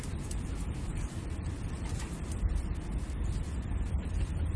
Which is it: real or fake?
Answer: fake